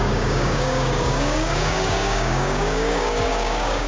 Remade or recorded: remade